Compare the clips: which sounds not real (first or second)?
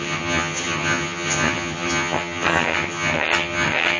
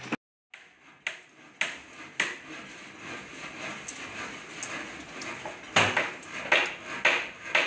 first